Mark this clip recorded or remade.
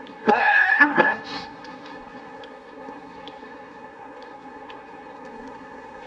remade